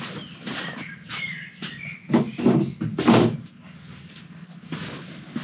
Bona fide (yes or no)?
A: yes